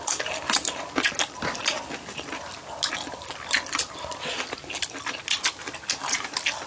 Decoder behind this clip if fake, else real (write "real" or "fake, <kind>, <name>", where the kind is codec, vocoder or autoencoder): real